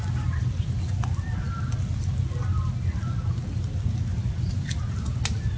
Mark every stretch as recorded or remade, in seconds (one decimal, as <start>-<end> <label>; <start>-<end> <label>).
0.0-5.6 recorded